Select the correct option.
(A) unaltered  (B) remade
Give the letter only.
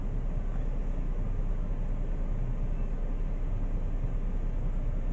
A